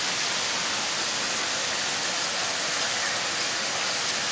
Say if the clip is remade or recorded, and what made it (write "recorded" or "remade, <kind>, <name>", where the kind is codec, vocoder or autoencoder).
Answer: recorded